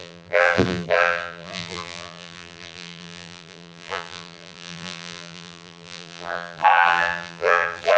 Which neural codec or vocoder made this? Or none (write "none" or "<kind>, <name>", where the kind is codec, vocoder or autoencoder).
vocoder, BigVGAN v2